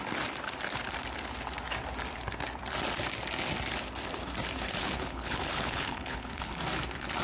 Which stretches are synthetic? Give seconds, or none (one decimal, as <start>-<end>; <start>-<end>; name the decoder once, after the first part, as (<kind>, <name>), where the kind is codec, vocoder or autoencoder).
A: 4.8-6.6 (codec, HILCodec)